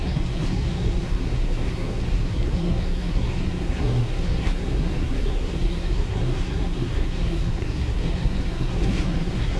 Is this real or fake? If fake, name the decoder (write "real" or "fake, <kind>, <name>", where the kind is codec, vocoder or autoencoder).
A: fake, codec, SNAC